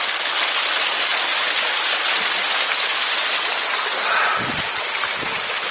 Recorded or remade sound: recorded